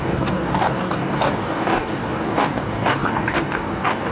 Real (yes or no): no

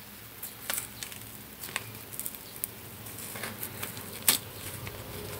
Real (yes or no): yes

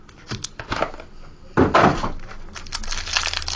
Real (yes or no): yes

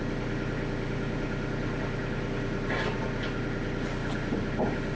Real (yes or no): yes